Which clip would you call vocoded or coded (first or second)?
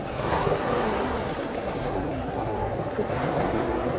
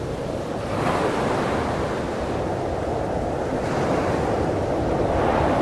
first